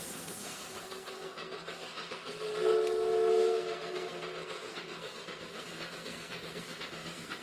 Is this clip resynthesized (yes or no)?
yes